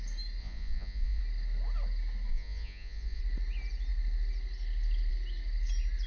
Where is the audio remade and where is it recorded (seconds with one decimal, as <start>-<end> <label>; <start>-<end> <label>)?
0.0-0.4 recorded; 0.4-1.2 remade; 1.2-2.3 recorded; 2.3-3.2 remade; 3.2-6.1 recorded